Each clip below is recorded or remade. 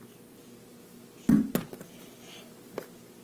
recorded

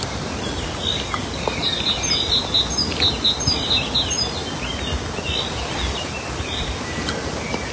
recorded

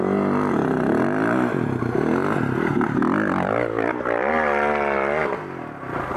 recorded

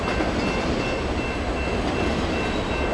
recorded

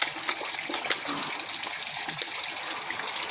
recorded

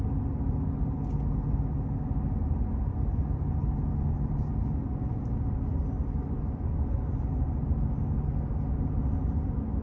recorded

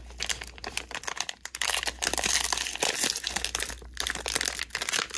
recorded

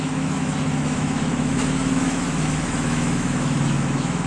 remade